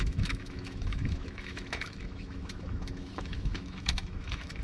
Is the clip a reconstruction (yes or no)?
yes